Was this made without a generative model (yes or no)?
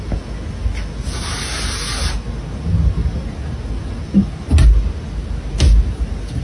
yes